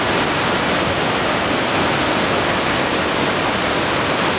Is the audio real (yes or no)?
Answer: yes